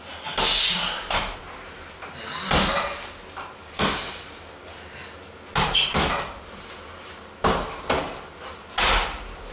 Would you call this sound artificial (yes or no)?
no